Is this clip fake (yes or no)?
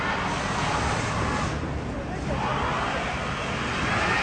no